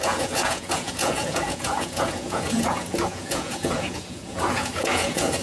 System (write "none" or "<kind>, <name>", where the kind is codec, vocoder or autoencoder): vocoder, Vocos